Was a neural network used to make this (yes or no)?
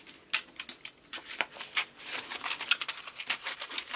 no